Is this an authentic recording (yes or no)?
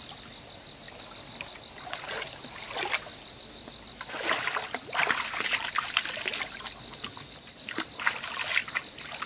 yes